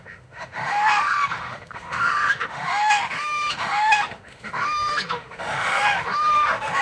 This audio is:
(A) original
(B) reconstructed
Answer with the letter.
B